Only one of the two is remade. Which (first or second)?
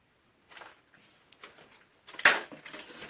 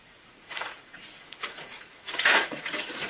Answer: second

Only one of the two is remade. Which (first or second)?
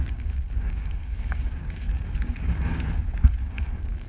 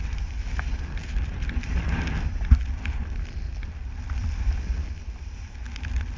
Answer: first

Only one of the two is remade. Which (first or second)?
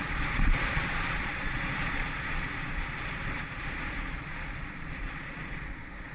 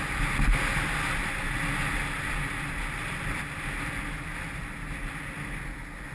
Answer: first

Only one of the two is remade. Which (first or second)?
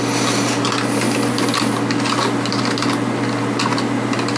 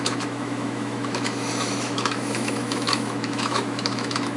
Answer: second